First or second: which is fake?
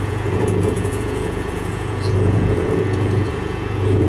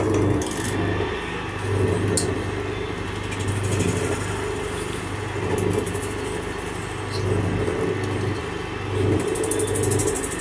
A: first